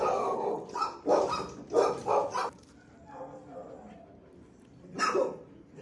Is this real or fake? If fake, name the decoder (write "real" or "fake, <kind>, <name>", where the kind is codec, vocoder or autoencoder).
real